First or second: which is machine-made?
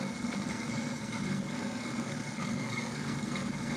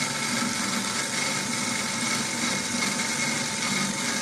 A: first